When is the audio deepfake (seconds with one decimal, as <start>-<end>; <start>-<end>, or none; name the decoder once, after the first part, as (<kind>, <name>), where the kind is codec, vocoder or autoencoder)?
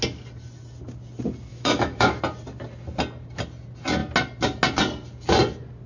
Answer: 1.5-2.2 (autoencoder, DAC-VAE)